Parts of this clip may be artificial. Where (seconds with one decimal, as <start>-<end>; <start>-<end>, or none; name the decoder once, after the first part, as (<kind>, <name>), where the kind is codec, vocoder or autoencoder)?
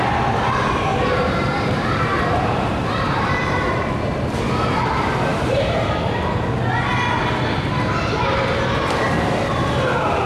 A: 0.9-3.7 (vocoder, BigVGAN v2); 5.3-5.9